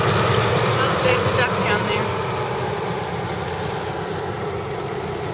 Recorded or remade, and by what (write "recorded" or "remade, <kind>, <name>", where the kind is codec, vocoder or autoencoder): recorded